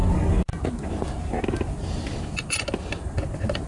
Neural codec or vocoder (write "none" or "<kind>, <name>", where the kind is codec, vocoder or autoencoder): none